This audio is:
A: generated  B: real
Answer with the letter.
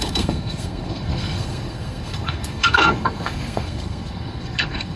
A